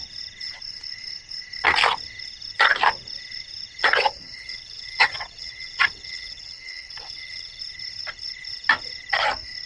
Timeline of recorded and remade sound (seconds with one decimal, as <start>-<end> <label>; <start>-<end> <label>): 0.0-3.8 recorded; 3.8-7.6 remade; 7.6-9.7 recorded